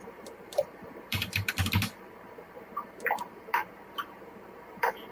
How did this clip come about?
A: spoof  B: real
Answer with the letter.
A